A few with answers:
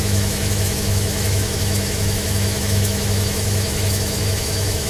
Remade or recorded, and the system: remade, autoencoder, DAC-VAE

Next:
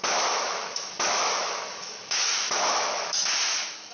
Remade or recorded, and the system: remade, autoencoder, DAC-VAE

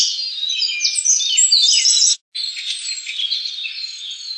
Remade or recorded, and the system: recorded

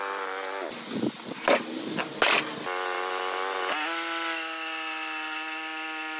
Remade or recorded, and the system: recorded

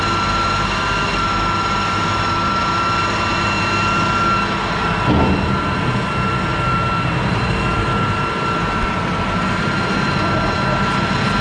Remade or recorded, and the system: recorded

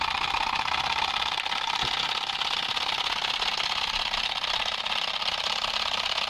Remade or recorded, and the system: recorded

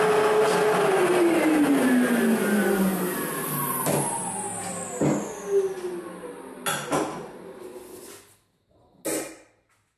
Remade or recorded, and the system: recorded